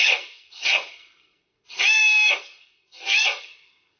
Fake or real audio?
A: fake